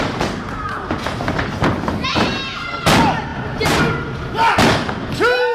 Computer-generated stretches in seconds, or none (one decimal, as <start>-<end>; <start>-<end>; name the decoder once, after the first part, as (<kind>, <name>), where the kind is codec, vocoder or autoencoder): 3.3-3.8 (vocoder, BigVGAN v2)